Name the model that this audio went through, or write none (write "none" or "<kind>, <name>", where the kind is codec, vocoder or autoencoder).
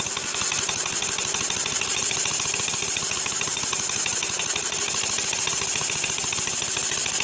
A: none